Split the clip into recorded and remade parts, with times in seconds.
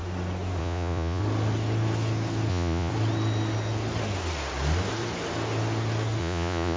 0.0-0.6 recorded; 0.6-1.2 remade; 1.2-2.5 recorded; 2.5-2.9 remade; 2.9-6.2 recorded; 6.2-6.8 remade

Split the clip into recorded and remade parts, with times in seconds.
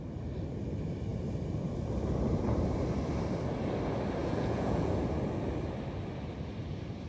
0.0-4.2 recorded; 4.2-4.9 remade; 4.9-7.1 recorded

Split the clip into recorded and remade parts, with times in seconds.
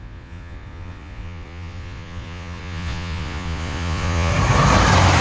0.0-4.3 remade; 4.3-5.2 recorded